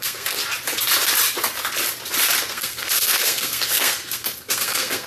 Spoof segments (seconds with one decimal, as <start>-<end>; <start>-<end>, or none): 0.0-0.4; 2.4-5.1